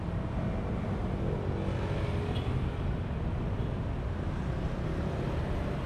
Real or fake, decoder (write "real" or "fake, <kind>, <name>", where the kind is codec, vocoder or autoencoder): real